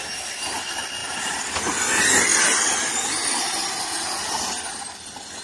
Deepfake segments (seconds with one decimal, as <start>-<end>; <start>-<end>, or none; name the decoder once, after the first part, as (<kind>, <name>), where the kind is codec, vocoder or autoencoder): 1.0-1.5 (vocoder, BigVGAN v2)

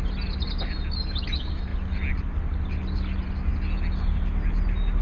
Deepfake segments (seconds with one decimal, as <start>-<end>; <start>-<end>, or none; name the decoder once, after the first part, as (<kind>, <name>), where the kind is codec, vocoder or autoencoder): 1.7-2.2 (vocoder, BigVGAN v2)